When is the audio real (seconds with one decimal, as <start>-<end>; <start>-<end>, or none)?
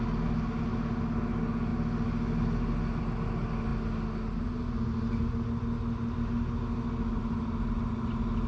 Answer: 0.0-8.5